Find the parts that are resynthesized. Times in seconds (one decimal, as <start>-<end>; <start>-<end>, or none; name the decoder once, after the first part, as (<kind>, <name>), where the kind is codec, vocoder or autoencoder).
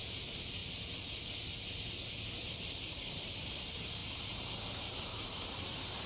0.0-0.6 (vocoder, BigVGAN v2); 2.5-4.0; 4.8-6.1